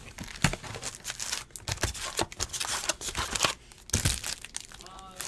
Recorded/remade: recorded